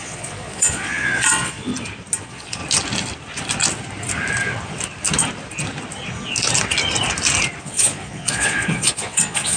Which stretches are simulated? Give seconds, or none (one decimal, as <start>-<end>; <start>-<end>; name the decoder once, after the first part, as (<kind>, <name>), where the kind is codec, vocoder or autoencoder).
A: 0.0-1.7 (vocoder, Vocos); 2.2-2.6; 7.6-9.6